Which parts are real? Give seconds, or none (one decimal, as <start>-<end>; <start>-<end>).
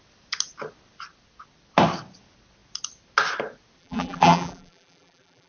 0.0-3.8